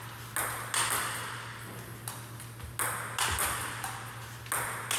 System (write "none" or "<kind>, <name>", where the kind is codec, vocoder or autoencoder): none